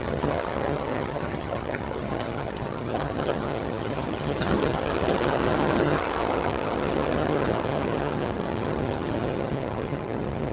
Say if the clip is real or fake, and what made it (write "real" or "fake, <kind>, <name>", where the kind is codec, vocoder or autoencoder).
fake, vocoder, HiFi-GAN